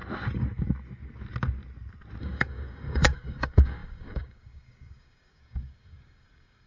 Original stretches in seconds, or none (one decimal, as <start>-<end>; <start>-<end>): 0.0-2.2